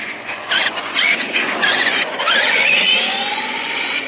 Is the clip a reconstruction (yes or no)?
yes